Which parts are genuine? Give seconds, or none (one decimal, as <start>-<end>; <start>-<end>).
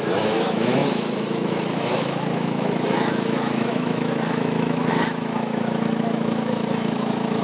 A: none